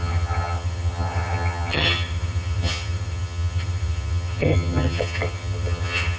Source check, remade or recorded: remade